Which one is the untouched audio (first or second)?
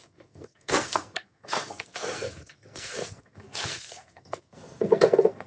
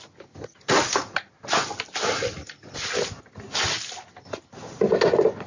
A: second